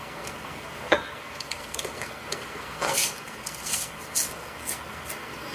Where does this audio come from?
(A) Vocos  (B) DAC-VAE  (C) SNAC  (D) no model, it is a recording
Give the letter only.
C